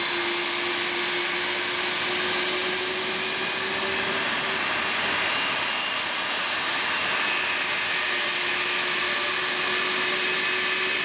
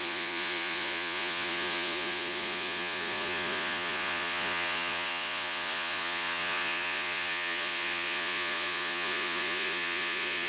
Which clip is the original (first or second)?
first